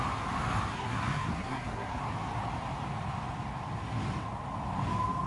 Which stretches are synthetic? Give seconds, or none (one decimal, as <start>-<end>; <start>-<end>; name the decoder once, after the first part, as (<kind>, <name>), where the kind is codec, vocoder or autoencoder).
0.7-2.0 (codec, SNAC)